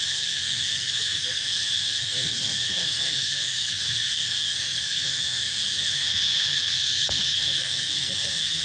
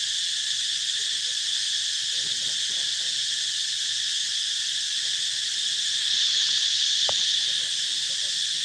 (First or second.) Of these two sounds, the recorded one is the second